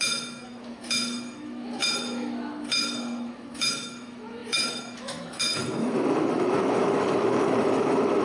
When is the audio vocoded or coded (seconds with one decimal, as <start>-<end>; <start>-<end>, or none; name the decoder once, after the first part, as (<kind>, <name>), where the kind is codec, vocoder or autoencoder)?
0.0-8.2 (autoencoder, DAC-VAE)